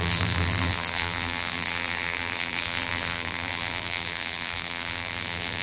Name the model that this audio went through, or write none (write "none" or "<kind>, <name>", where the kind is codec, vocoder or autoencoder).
vocoder, BigVGAN v2